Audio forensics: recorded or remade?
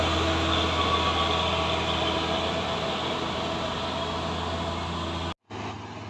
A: recorded